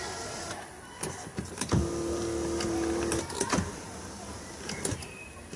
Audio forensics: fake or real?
real